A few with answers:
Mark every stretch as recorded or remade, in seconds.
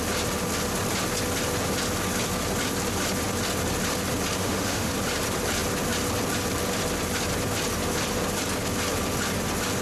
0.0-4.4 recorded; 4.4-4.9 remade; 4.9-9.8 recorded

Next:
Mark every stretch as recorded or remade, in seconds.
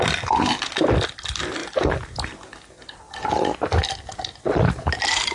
0.0-5.3 recorded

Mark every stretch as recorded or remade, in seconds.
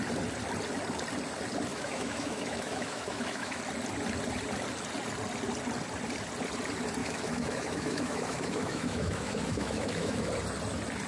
0.0-1.7 recorded; 1.7-3.6 remade; 3.6-7.0 recorded; 7.0-10.3 remade; 10.3-11.1 recorded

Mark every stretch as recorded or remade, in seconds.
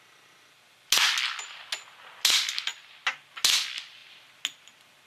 0.0-5.1 recorded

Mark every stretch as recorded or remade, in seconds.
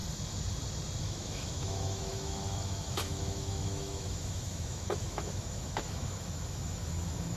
0.0-1.0 recorded; 1.0-7.4 remade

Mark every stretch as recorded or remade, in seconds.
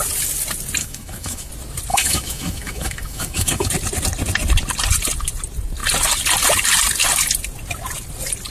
0.0-0.8 recorded; 0.8-1.5 remade; 1.5-1.9 recorded; 1.9-3.7 remade; 3.7-8.5 recorded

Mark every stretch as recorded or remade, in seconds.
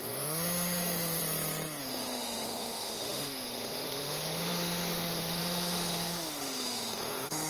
0.0-1.2 remade; 1.2-1.8 recorded; 1.8-7.5 remade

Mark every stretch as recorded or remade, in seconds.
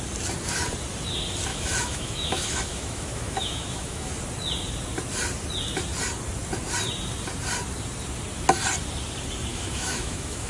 0.0-1.5 recorded; 1.5-4.1 remade; 4.1-9.5 recorded; 9.5-10.5 remade